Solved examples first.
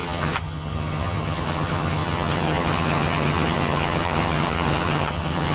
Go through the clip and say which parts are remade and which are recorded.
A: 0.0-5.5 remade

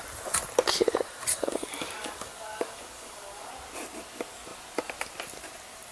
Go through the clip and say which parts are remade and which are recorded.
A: 0.0-1.3 recorded; 1.3-3.5 remade; 3.5-5.9 recorded